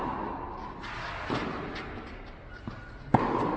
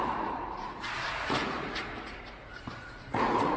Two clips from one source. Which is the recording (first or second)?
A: first